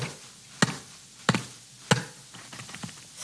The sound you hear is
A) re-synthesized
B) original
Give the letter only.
B